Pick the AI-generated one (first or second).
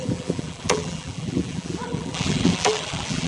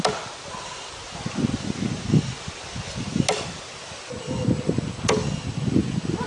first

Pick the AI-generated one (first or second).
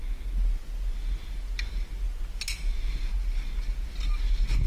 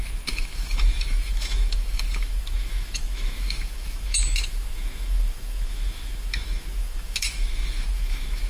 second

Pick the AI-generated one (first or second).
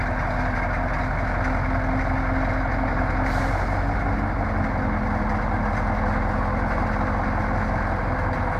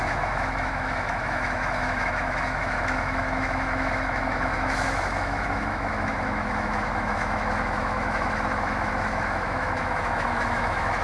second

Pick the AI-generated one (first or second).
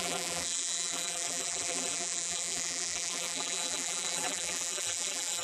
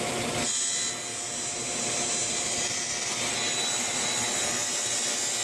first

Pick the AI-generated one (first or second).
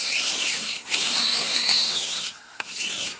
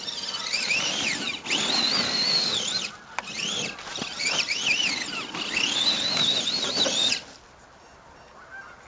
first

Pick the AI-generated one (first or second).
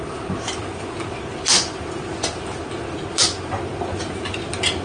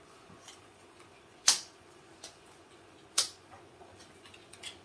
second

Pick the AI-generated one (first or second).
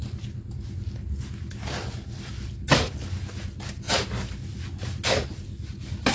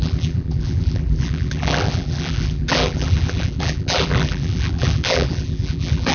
second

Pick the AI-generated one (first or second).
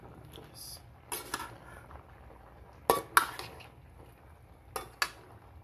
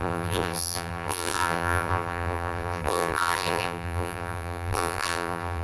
second